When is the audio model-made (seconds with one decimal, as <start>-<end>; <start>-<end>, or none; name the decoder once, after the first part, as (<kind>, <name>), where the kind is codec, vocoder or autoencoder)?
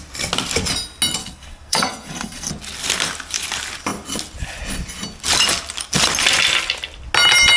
1.2-2.5 (codec, SNAC)